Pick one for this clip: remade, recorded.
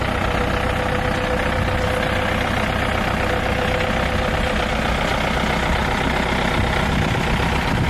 recorded